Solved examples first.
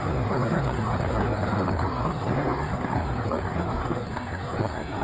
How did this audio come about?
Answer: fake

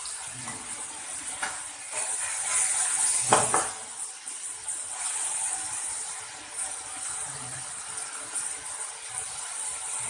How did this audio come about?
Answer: real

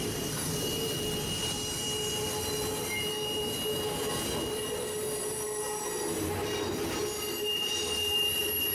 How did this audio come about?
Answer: real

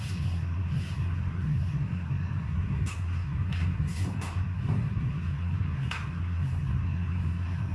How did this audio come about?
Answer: fake